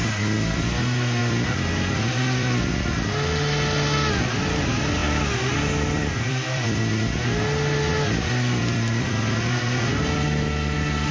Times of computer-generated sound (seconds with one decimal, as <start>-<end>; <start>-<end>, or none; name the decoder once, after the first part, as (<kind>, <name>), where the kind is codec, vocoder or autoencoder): 1.2-2.7 (vocoder, BigVGAN v2); 5.0-6.8; 7.9-9.1